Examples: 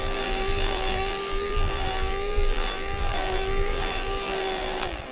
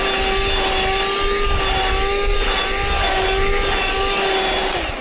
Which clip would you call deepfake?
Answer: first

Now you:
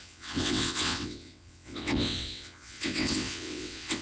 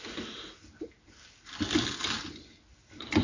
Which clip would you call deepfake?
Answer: first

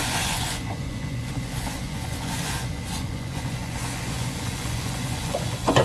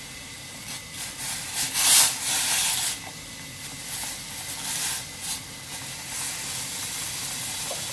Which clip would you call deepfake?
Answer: first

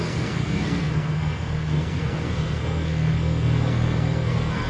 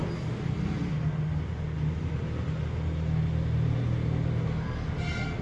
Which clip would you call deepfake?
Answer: first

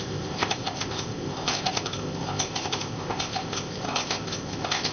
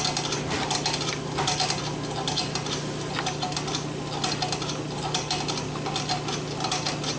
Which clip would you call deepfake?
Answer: first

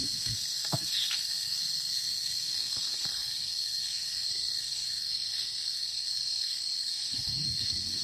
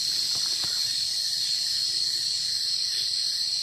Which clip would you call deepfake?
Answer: first